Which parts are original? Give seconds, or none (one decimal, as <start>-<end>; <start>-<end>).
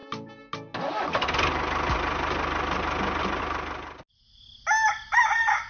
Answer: 0.0-5.7